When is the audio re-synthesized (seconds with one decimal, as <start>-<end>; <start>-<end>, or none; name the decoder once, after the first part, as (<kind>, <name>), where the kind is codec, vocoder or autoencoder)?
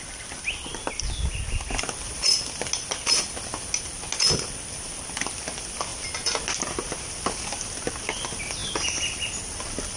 none